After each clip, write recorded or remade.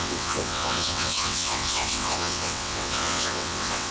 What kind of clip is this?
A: remade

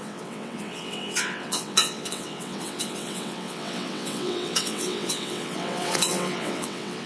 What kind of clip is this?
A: remade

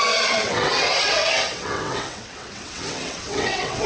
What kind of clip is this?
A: remade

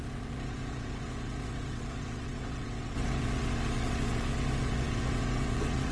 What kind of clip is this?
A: remade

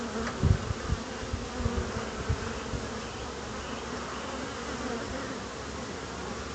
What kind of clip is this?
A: recorded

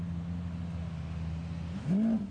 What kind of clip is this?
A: recorded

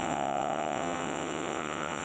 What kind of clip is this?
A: remade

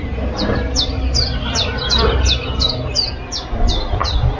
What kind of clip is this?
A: recorded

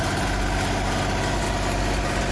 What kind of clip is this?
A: recorded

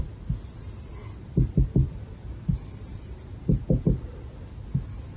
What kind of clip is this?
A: recorded